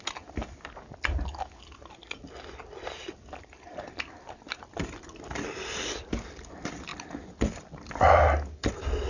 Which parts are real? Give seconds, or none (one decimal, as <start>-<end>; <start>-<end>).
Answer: 0.0-9.1